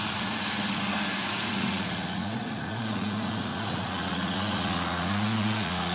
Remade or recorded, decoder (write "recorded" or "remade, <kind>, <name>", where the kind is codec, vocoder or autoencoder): remade, vocoder, Vocos